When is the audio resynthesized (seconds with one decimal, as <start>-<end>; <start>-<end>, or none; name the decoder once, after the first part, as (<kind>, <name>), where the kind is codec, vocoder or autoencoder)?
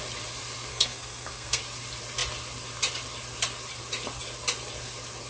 0.7-1.6 (codec, SNAC)